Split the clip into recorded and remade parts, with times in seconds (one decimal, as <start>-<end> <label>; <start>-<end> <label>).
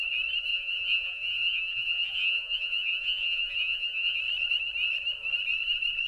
0.0-0.5 recorded; 0.5-4.2 remade; 4.2-6.1 recorded